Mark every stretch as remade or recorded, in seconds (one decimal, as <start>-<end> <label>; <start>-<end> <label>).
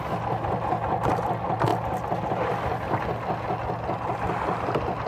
0.0-5.1 recorded